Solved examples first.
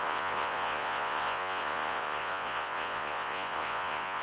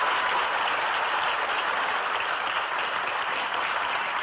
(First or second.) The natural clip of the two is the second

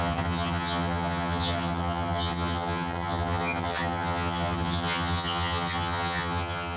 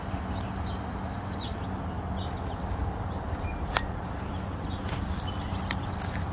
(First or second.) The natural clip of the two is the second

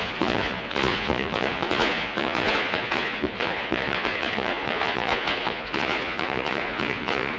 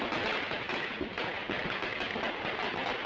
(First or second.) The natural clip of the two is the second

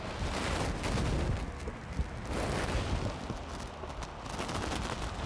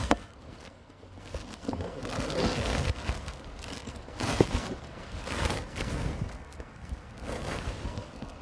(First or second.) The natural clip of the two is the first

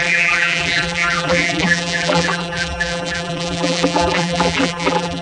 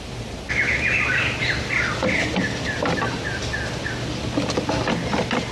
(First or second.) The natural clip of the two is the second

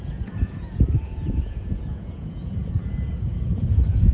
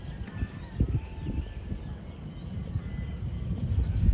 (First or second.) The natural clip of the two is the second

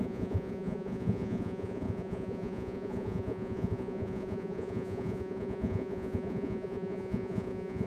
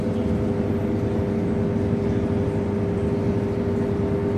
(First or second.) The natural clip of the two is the second